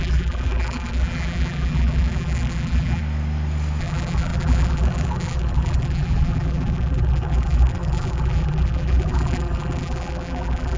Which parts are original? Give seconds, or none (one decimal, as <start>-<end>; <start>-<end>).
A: 3.0-3.8